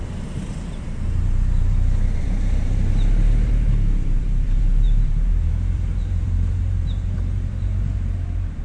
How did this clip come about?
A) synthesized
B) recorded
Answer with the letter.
A